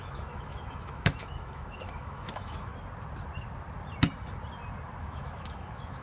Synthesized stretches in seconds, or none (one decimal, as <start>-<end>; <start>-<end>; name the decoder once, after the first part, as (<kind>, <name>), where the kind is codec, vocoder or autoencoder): 0.0-2.7 (autoencoder, DAC-VAE); 5.0-6.0